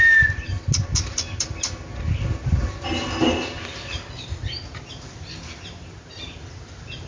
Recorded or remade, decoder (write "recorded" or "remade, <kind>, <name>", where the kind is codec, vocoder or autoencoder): recorded